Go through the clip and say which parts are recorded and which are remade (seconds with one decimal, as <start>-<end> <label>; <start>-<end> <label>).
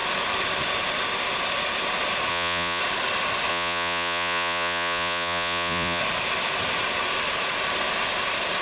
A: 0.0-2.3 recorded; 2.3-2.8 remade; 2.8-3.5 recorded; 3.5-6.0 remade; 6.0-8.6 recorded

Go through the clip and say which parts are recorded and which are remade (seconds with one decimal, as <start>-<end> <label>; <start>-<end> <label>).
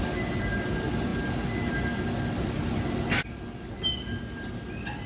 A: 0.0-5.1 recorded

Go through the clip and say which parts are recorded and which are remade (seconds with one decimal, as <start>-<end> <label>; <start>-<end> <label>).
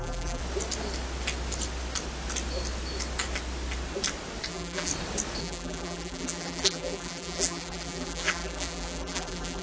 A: 0.0-0.4 remade; 0.4-4.5 recorded; 4.5-4.9 remade; 4.9-5.4 recorded; 5.4-9.6 remade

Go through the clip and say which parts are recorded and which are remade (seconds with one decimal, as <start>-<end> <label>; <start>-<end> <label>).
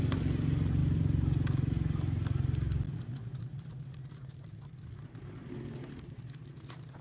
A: 0.0-7.0 recorded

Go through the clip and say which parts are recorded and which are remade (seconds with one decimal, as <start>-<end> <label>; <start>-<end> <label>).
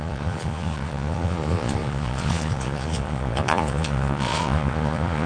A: 0.0-5.3 remade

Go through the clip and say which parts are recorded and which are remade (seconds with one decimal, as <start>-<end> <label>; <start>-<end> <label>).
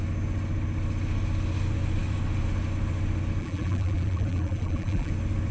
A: 0.0-3.4 recorded; 3.4-5.1 remade; 5.1-5.5 recorded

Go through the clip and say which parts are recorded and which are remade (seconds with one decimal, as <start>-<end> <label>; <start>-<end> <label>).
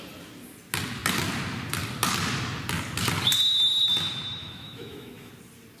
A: 0.0-4.4 recorded; 4.4-5.3 remade; 5.3-5.8 recorded